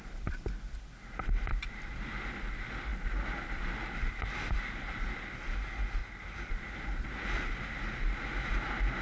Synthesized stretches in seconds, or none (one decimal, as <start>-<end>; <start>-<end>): none